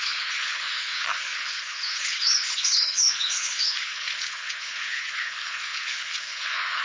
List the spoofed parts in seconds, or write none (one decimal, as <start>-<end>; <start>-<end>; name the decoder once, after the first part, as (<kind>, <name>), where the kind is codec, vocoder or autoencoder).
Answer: 0.0-6.8 (codec, HILCodec)

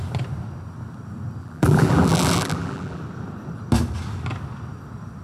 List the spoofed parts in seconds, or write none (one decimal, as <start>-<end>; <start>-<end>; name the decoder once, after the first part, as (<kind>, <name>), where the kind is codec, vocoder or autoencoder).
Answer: 1.4-3.0 (vocoder, BigVGAN v2)

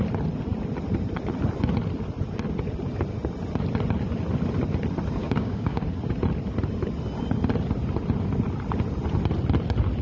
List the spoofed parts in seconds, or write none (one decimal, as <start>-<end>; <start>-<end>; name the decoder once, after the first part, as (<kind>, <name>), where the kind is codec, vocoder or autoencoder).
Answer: 5.2-5.8 (codec, DAC)

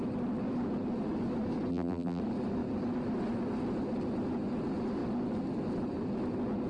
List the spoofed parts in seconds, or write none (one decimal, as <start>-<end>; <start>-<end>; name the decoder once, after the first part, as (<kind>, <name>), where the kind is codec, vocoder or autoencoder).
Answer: 1.7-2.2 (vocoder, BigVGAN v2)

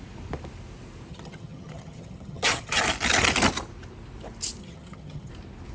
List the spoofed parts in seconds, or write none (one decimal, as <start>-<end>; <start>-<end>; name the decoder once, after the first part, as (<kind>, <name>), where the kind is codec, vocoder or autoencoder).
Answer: 1.1-2.8 (vocoder, HiFi-GAN); 4.6-5.3